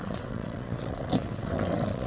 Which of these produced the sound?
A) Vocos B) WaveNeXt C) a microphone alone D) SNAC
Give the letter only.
B